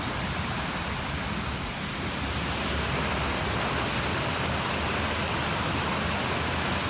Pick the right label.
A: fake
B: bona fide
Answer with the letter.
B